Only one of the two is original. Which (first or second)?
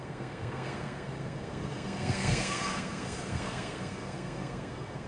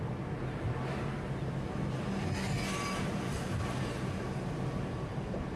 second